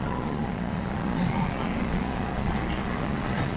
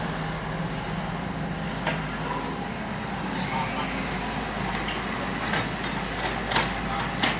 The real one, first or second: second